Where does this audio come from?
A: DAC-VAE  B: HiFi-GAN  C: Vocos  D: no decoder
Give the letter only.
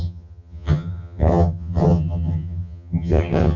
B